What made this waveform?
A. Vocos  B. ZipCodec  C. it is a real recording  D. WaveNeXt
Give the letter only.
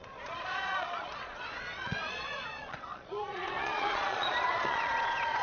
A